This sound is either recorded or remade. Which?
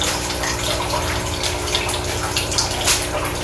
recorded